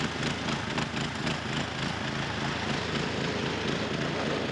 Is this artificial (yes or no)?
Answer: no